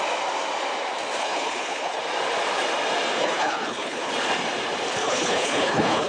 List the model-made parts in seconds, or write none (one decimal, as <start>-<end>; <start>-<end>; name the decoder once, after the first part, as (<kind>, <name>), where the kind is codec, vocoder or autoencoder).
1.2-2.0 (codec, HILCodec); 3.2-4.1; 5.0-6.1